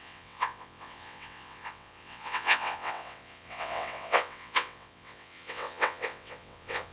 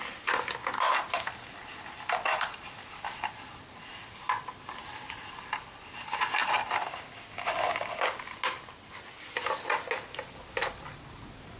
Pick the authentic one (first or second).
second